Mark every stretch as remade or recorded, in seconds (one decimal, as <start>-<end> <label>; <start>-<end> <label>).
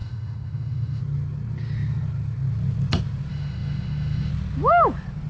0.0-1.0 remade; 1.0-3.3 recorded; 3.3-4.3 remade; 4.3-5.3 recorded